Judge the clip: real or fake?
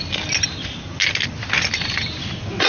real